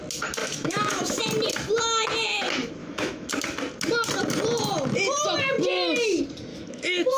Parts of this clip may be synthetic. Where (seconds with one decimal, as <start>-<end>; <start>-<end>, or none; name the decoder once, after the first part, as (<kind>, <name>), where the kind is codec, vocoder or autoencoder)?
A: 0.4-1.2 (autoencoder, DAC-VAE); 2.8-3.3; 6.5-7.2